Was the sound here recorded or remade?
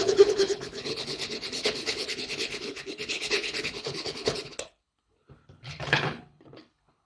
remade